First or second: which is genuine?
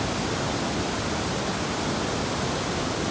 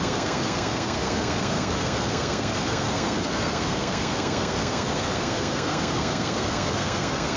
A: first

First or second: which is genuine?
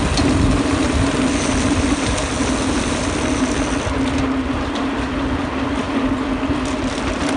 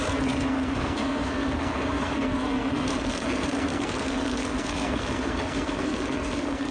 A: first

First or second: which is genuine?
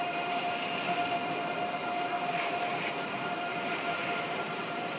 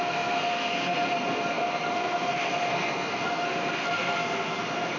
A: first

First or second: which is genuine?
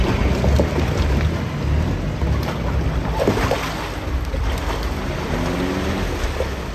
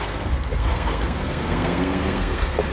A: first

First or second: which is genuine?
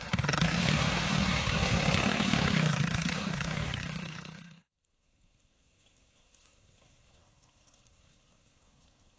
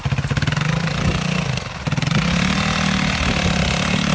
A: second